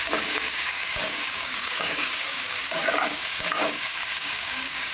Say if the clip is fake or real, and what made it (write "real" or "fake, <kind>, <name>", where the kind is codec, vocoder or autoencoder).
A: fake, codec, DAC